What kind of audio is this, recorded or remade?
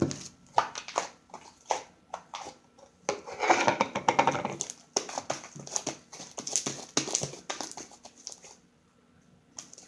recorded